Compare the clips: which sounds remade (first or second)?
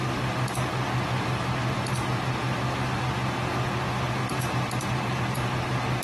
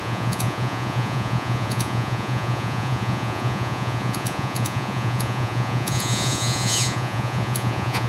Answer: second